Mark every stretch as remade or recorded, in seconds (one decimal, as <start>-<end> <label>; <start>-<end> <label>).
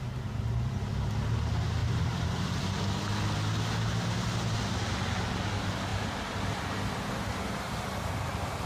0.0-1.8 recorded; 1.8-2.6 remade; 2.6-5.9 recorded; 5.9-6.6 remade; 6.6-7.2 recorded; 7.2-7.9 remade; 7.9-8.7 recorded